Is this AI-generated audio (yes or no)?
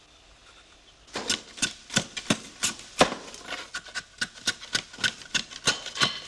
no